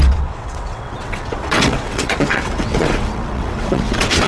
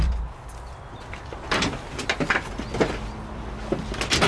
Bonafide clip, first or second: second